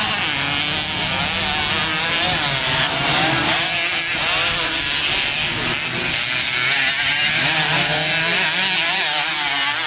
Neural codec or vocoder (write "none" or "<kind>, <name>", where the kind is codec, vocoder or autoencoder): none